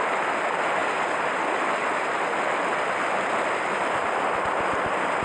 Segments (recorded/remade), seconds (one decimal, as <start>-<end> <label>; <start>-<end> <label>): 0.0-5.2 recorded